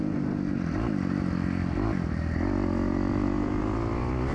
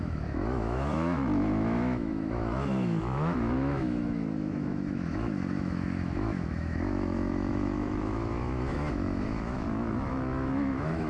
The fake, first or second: second